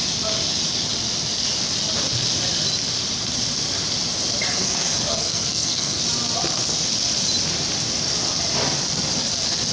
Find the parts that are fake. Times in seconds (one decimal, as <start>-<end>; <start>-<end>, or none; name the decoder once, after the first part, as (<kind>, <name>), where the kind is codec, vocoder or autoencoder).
4.5-6.0 (codec, SNAC)